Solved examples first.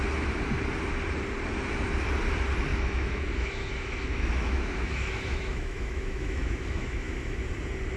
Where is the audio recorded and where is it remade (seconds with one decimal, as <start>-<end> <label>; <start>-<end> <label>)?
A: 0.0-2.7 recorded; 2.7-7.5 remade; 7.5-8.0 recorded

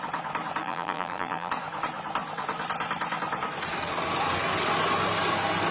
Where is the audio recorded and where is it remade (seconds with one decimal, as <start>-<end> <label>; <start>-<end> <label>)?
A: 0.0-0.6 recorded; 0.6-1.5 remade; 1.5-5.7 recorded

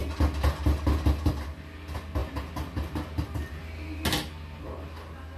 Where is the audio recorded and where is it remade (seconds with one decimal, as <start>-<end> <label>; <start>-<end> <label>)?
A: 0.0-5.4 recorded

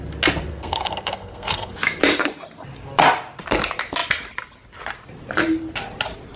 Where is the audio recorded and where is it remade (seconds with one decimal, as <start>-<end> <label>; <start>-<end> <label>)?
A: 0.0-0.5 recorded; 0.5-1.7 remade; 1.7-6.4 recorded

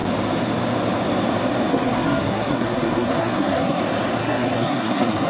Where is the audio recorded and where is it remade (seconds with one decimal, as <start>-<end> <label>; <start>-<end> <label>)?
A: 0.0-1.7 recorded; 1.7-3.8 remade; 3.8-4.2 recorded; 4.2-5.3 remade

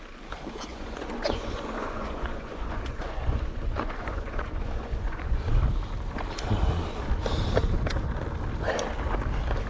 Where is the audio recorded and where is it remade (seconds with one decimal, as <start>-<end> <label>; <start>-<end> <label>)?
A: 0.0-0.7 recorded; 0.7-5.4 remade; 5.4-9.7 recorded